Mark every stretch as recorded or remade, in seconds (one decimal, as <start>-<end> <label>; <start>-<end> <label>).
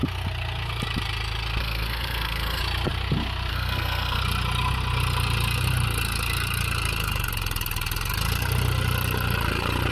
0.0-1.6 recorded; 1.6-2.6 remade; 2.6-3.5 recorded; 3.5-4.2 remade; 4.2-9.9 recorded